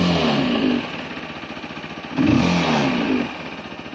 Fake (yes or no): no